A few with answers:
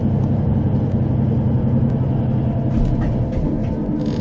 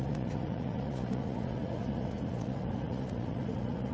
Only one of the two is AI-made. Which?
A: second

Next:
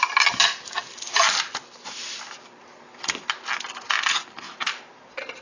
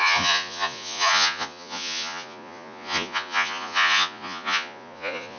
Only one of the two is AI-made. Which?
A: second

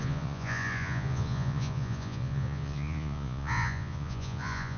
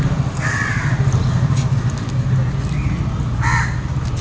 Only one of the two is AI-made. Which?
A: first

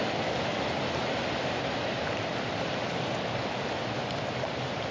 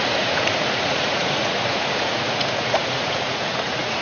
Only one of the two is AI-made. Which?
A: second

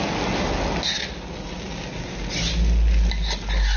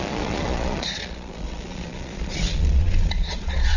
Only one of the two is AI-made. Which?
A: second